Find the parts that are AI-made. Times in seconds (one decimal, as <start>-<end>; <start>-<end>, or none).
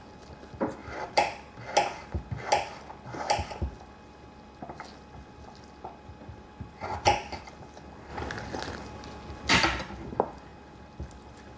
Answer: 0.8-1.6